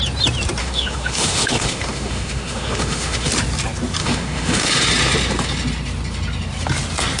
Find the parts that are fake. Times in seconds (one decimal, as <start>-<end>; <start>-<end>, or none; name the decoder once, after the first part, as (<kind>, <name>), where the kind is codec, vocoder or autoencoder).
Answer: 0.6-3.3 (autoencoder, DAC-VAE); 4.0-4.7